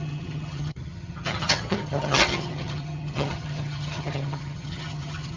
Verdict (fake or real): fake